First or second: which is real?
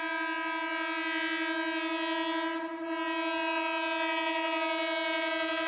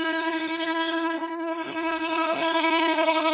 first